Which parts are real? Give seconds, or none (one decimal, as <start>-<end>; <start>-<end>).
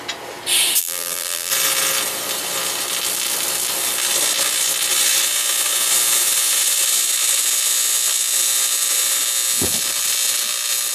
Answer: 0.0-0.8; 1.5-10.9